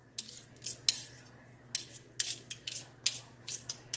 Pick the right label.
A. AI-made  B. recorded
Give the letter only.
B